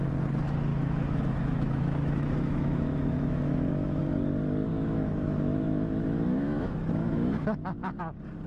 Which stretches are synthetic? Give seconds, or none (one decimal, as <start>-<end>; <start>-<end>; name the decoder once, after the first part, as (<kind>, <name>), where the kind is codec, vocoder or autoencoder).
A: 0.7-4.0 (autoencoder, DAC-VAE); 4.7-8.0